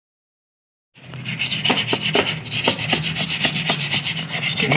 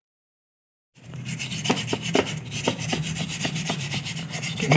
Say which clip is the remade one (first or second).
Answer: second